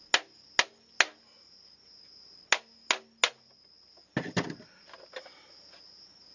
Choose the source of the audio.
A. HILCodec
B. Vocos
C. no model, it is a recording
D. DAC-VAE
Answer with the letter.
C